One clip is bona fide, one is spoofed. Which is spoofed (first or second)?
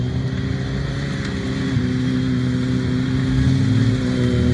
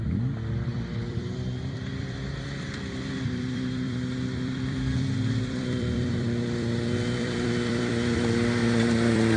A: second